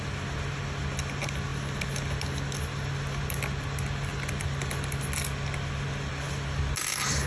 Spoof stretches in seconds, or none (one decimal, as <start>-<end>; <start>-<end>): none